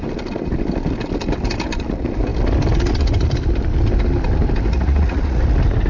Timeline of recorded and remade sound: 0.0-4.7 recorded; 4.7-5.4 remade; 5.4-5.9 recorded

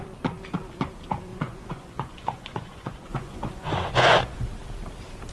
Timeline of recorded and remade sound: 0.0-1.3 recorded; 1.3-4.5 remade; 4.5-5.3 recorded

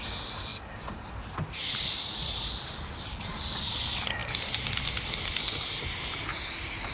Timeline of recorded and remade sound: 0.0-6.9 recorded